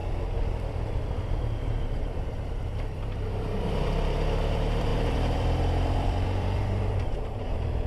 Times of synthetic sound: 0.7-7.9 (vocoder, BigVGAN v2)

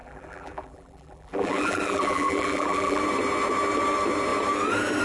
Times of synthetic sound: 0.0-3.0 (vocoder, BigVGAN v2)

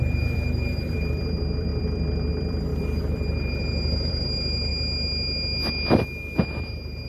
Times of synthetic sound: 0.0-4.7 (vocoder, BigVGAN v2); 6.5-7.1

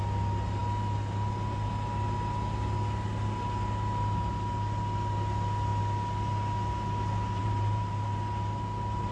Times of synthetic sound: 7.4-8.1 (vocoder, BigVGAN v2)

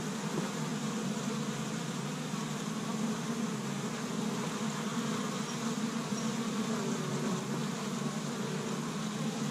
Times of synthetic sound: 0.0-0.7 (vocoder, BigVGAN v2); 4.5-9.5

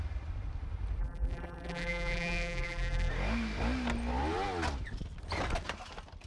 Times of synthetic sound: 1.0-3.1 (vocoder, BigVGAN v2)

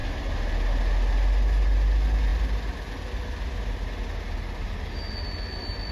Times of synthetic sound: none